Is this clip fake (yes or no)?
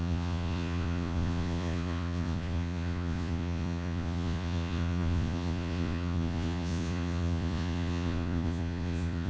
yes